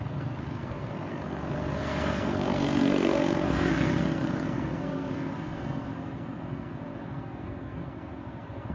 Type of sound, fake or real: fake